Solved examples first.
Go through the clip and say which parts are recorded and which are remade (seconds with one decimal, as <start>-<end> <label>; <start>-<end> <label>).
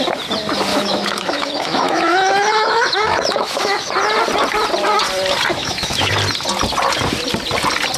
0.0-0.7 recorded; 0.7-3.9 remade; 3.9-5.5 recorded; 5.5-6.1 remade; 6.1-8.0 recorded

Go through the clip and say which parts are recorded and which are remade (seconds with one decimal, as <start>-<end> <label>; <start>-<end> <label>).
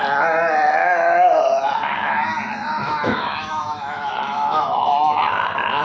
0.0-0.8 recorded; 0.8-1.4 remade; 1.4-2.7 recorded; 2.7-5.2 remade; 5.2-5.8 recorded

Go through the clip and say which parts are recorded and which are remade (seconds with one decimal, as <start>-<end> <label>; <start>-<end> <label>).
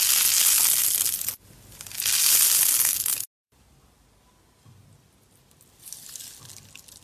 0.0-7.0 recorded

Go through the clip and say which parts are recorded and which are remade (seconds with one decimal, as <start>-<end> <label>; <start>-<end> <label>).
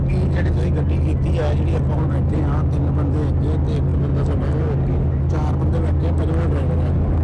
0.0-7.2 recorded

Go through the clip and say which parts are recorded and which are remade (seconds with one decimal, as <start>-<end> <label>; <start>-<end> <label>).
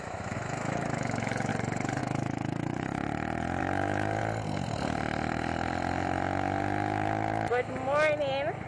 0.0-1.5 remade; 1.5-2.0 recorded; 2.0-2.9 remade; 2.9-3.6 recorded; 3.6-4.2 remade; 4.2-8.7 recorded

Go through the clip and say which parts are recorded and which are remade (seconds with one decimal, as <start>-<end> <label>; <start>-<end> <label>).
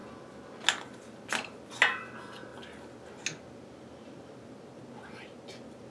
0.0-5.9 recorded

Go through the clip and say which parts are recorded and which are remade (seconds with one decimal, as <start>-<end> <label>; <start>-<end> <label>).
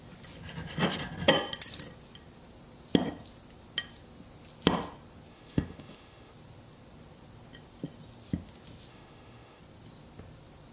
0.0-5.3 recorded; 5.3-6.3 remade; 6.3-8.9 recorded; 8.9-9.6 remade; 9.6-10.7 recorded